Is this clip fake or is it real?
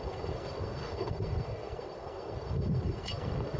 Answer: fake